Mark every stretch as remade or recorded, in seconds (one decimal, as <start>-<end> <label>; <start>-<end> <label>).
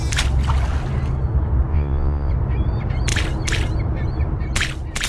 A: 0.0-1.7 recorded; 1.7-2.3 remade; 2.3-5.1 recorded